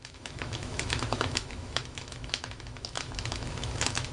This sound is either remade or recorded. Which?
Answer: remade